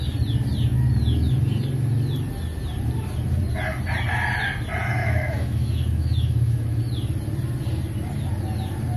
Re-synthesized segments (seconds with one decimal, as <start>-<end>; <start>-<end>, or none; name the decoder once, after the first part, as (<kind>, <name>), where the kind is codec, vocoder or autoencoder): 5.0-6.8 (autoencoder, DAC-VAE)